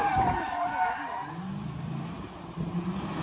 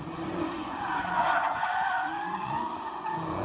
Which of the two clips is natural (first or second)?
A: first